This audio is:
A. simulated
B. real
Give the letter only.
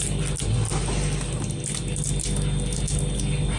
B